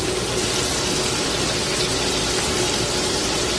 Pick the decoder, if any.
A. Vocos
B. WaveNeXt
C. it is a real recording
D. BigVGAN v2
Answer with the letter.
C